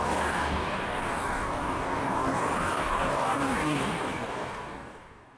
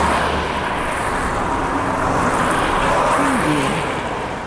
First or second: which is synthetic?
first